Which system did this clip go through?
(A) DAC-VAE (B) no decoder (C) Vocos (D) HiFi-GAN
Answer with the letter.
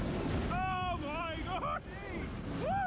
B